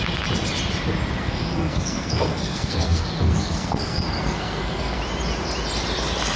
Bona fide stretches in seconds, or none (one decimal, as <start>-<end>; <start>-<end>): 0.0-1.2; 5.0-6.4